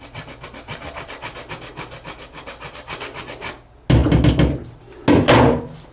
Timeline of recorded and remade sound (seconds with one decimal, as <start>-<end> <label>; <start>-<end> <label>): 0.0-5.9 recorded